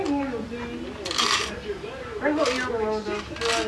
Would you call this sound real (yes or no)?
yes